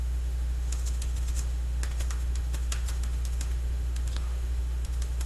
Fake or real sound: fake